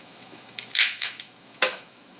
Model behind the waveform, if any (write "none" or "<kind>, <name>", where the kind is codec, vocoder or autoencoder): autoencoder, DAC-VAE